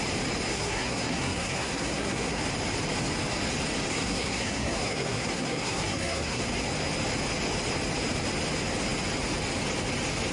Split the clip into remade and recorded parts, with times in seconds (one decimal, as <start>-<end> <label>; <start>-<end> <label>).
0.0-0.5 recorded; 0.5-2.4 remade; 2.4-3.9 recorded; 3.9-6.4 remade; 6.4-10.3 recorded